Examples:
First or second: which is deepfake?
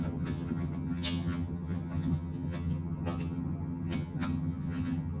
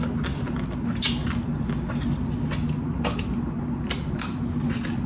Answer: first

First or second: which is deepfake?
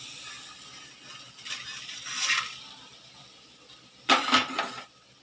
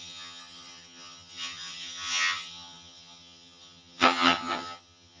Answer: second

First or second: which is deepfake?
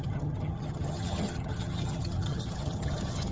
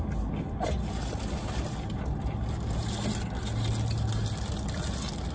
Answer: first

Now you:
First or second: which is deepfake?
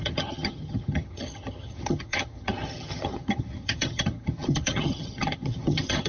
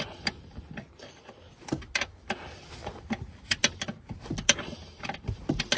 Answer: first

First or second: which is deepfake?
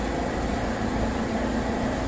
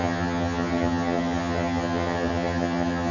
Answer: second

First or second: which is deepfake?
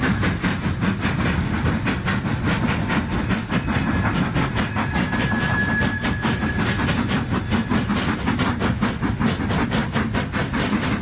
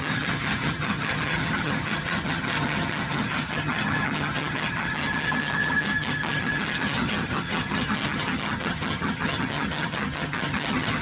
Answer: second